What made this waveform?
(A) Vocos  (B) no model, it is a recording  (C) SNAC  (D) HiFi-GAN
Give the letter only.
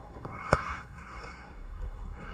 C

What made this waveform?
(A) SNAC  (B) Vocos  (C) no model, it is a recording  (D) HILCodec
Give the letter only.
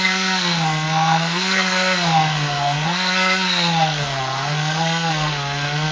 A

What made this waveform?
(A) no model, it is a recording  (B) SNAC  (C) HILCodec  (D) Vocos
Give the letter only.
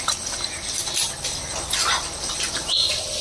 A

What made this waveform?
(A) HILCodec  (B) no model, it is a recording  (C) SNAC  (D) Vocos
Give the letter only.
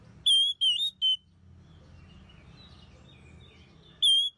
B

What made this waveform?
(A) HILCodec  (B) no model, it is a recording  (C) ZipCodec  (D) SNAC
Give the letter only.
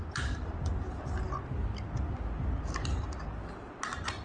B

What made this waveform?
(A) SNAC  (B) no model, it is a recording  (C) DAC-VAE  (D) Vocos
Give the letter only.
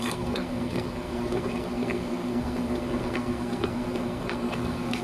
A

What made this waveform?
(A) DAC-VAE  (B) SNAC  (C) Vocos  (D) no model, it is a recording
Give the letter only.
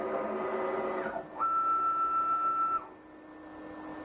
D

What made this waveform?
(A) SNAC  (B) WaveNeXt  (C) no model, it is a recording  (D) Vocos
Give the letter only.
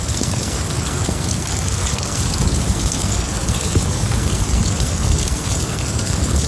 A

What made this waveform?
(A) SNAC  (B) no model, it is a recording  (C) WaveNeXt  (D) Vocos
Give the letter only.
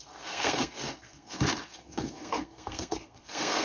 A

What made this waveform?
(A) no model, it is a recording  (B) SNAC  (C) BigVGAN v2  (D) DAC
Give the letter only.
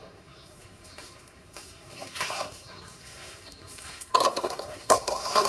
B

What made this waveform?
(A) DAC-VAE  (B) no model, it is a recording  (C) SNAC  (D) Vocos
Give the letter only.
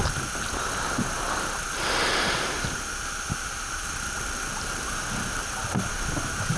B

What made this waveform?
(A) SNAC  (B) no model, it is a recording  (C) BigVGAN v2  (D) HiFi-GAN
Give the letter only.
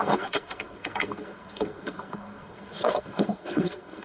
A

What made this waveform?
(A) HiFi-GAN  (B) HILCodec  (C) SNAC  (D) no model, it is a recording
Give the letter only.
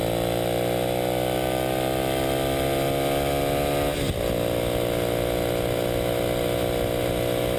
D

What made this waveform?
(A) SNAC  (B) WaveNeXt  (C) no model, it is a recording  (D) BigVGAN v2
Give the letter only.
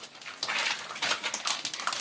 C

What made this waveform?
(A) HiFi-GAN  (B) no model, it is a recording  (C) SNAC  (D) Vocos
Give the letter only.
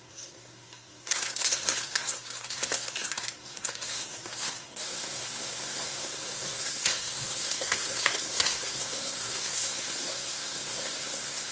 C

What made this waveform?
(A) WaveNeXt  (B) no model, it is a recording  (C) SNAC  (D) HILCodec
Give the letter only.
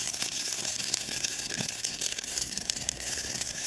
C